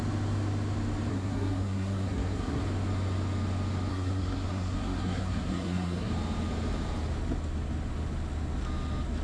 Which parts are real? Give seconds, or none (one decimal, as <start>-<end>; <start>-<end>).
0.0-1.1; 2.6-3.9; 6.1-9.2